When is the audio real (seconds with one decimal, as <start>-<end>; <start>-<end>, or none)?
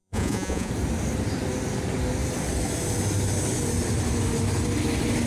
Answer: 0.7-5.3